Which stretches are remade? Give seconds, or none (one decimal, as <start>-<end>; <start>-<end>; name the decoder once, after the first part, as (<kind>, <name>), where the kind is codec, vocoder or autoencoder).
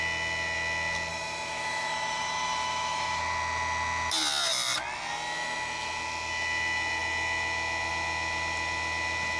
1.1-3.2 (autoencoder, DAC-VAE)